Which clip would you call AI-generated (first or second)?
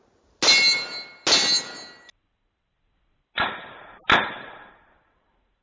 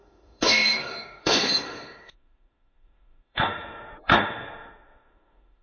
second